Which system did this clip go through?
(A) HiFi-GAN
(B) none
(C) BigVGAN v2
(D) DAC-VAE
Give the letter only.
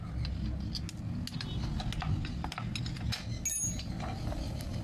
B